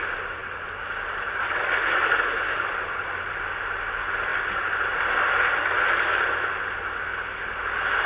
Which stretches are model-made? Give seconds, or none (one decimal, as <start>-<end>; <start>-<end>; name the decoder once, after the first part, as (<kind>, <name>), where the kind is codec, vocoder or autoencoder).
none